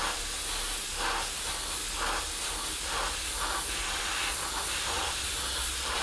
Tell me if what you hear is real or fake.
real